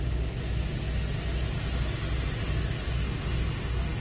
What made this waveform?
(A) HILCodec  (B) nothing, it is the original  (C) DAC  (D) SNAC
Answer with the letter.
B